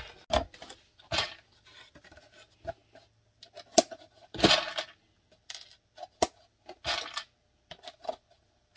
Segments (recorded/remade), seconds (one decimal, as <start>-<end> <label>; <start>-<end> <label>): 0.0-8.8 recorded